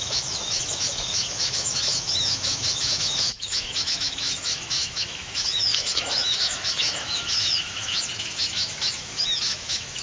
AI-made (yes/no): yes